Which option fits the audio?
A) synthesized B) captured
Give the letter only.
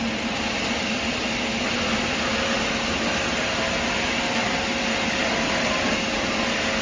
B